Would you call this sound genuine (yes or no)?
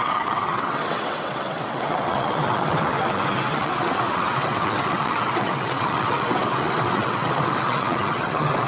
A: no